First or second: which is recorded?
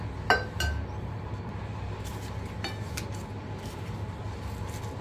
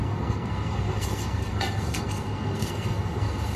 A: first